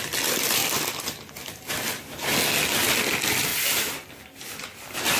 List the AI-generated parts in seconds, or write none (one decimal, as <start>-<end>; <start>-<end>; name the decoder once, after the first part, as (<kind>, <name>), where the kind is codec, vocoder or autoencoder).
none